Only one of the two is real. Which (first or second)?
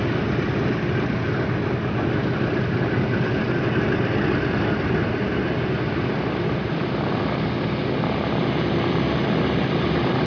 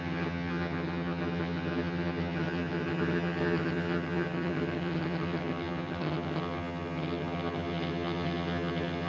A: first